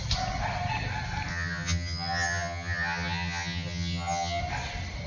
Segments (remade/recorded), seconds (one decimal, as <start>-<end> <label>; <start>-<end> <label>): 0.0-1.3 recorded; 1.3-4.4 remade; 4.4-5.1 recorded

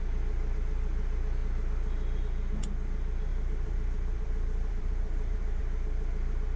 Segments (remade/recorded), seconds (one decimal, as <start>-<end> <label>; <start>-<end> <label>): 0.0-3.3 recorded; 3.3-5.6 remade; 5.6-6.6 recorded